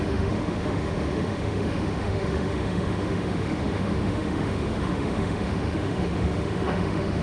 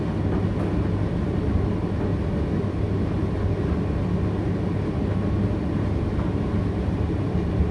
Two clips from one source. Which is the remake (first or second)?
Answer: first